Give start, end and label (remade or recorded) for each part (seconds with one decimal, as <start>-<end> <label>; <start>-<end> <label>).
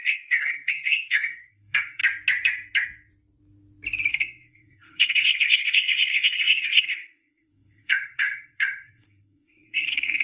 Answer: 0.0-2.0 remade; 2.0-4.1 recorded; 4.1-10.2 remade